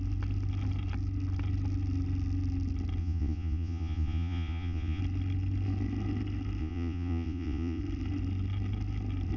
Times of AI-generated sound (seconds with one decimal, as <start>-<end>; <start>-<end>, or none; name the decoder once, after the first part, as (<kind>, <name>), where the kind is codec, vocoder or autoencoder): 3.0-5.0 (vocoder, Vocos); 6.6-7.8